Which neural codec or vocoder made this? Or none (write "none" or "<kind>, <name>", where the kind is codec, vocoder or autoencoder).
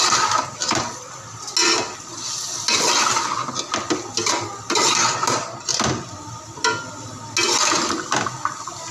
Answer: none